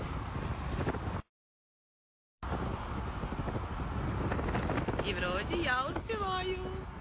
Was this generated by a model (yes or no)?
no